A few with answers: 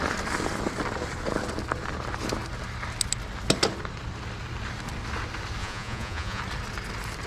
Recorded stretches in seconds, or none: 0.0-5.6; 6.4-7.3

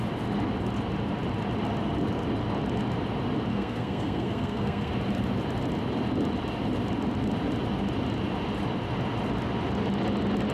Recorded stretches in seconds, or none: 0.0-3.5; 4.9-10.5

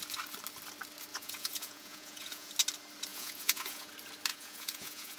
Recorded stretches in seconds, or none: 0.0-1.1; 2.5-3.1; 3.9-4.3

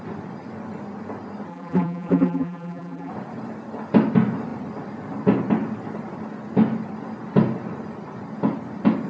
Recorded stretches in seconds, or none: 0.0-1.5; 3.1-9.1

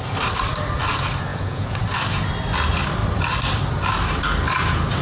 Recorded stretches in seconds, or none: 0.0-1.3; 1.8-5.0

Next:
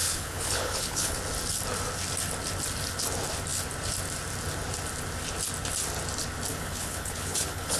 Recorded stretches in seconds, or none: 1.2-6.5

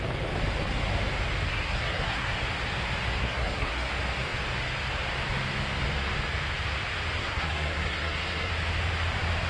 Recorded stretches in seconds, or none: 0.0-1.5; 2.3-3.2; 3.9-7.2; 8.5-9.5

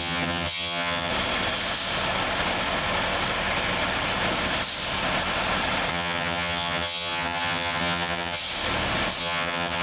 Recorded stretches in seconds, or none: 1.1-5.9; 8.4-9.2